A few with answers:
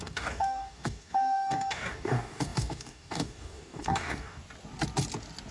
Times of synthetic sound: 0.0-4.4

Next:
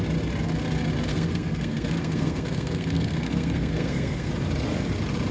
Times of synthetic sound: 1.1-4.3

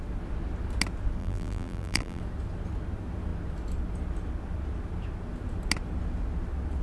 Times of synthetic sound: 1.2-2.2